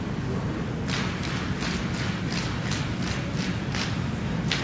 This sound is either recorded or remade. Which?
recorded